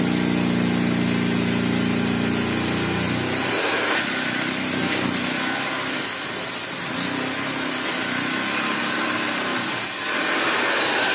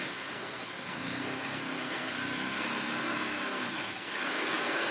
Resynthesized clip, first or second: second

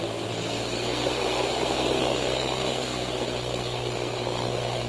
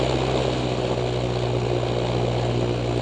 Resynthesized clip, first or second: first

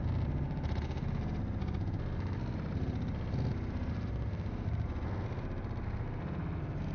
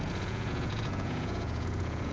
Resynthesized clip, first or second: second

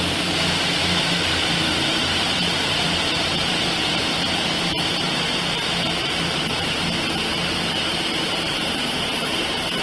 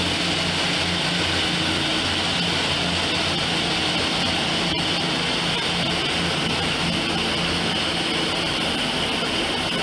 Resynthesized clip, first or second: first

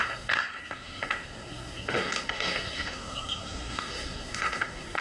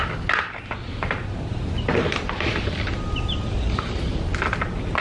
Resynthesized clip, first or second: first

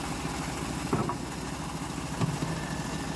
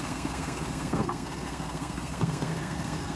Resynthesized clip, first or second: second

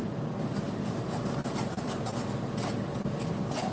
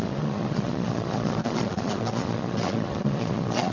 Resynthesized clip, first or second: second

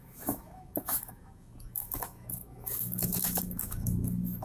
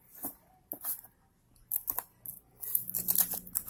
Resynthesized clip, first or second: first